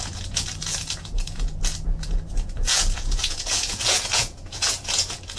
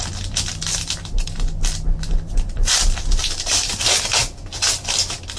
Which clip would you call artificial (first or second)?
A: first